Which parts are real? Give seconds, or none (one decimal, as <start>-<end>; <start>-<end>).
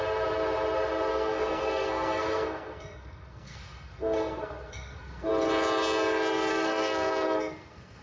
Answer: 0.0-1.1; 5.3-6.5